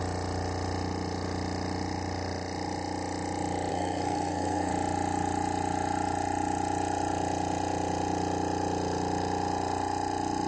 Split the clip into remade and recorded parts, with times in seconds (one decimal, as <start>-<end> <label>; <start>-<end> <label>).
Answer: 0.0-3.7 recorded; 3.7-4.7 remade; 4.7-10.5 recorded